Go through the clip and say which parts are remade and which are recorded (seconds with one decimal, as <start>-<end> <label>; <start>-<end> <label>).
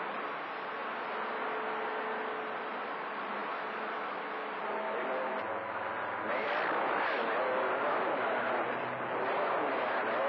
0.0-10.3 recorded